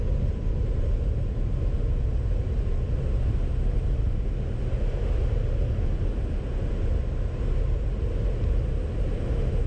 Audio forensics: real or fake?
real